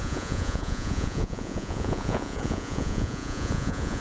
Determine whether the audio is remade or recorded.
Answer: remade